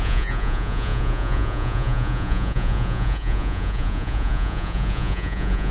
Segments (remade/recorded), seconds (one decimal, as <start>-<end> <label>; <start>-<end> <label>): 0.0-5.7 remade